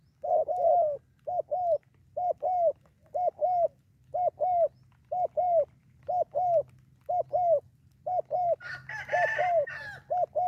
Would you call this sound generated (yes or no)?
no